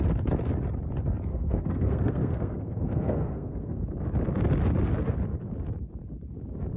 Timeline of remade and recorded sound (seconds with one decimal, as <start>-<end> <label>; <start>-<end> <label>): 0.0-1.3 recorded; 1.3-3.8 remade; 3.8-6.8 recorded